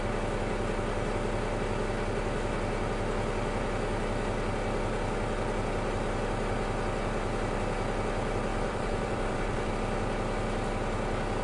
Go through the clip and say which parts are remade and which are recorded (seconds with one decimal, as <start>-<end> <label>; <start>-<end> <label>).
0.0-8.5 recorded; 8.5-9.7 remade; 9.7-11.4 recorded